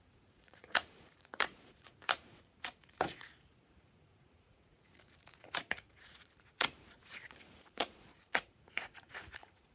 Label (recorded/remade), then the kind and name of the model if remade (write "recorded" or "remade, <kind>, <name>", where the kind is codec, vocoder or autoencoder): remade, vocoder, Vocos